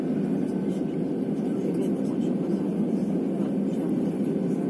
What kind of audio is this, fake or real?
real